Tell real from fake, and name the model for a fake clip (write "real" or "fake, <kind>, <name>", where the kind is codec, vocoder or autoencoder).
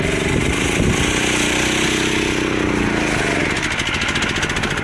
real